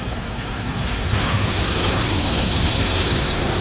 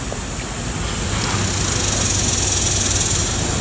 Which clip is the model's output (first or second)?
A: first